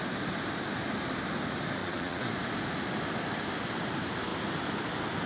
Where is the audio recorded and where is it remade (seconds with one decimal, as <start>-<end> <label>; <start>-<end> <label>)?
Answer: 0.0-1.8 recorded; 1.8-2.3 remade; 2.3-5.3 recorded